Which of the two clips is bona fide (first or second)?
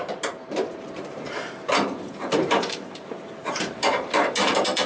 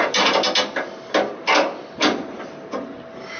second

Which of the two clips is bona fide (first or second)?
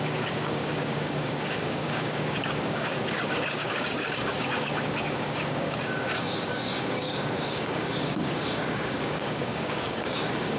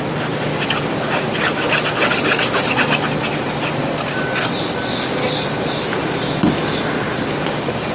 second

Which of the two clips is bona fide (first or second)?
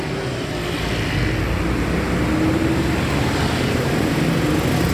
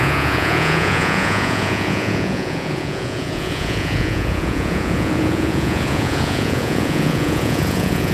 first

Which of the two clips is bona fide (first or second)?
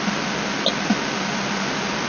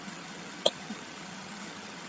first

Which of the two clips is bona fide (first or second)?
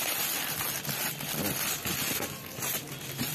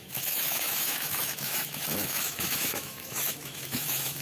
first